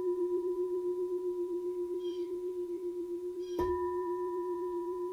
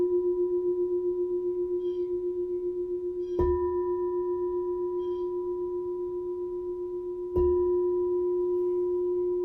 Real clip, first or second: second